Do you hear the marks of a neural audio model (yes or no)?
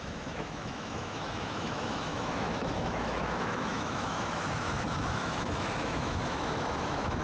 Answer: yes